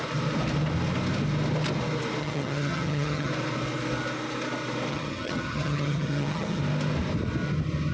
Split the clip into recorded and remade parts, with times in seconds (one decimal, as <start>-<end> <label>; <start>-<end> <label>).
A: 0.0-2.2 recorded; 2.2-3.3 remade; 3.3-4.9 recorded; 4.9-6.6 remade; 6.6-7.9 recorded